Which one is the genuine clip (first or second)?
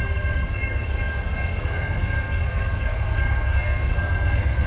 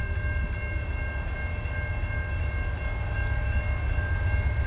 second